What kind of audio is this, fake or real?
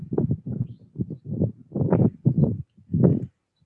real